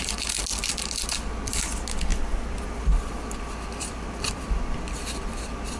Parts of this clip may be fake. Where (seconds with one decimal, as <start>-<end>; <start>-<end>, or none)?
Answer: 2.1-5.8